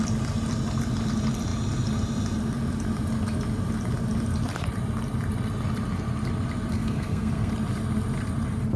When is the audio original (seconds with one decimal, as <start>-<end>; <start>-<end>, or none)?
0.0-6.7; 7.5-8.8